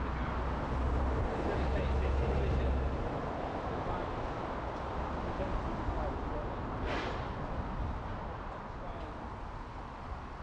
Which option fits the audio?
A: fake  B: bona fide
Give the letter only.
B